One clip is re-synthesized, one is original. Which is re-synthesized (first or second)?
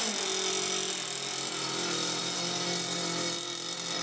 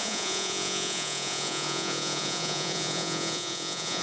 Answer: second